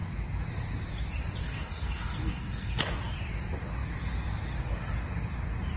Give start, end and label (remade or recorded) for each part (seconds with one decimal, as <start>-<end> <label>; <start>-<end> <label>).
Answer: 0.0-1.4 recorded; 1.4-2.8 remade; 2.8-5.8 recorded